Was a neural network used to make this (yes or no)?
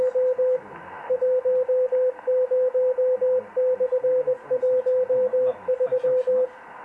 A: no